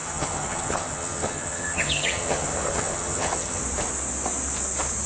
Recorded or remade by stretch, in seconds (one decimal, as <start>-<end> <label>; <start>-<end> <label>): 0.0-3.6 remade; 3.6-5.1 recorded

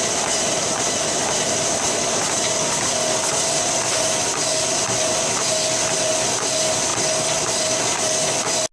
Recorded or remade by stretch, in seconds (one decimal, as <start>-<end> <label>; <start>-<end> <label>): 0.0-8.7 recorded

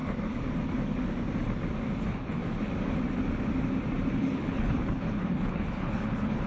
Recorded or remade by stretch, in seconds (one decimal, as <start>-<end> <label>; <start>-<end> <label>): 0.0-2.0 recorded; 2.0-2.4 remade; 2.4-4.2 recorded; 4.2-6.5 remade